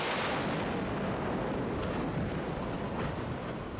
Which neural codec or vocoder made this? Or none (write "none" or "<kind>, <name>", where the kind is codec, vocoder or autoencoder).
none